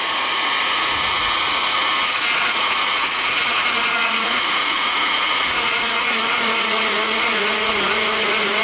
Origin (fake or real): fake